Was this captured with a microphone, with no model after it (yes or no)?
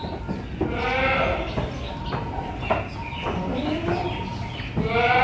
yes